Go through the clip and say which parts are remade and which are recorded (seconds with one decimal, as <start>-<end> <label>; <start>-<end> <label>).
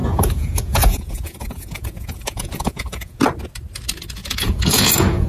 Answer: 0.0-3.2 remade; 3.2-4.2 recorded; 4.2-5.3 remade